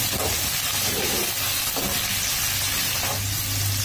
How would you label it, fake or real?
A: real